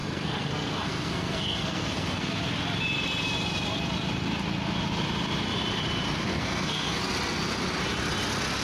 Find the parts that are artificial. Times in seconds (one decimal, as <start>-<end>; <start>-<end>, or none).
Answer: 0.0-2.4; 6.3-7.0